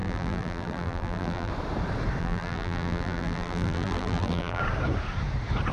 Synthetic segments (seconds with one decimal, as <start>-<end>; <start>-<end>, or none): 0.0-1.5; 2.2-4.6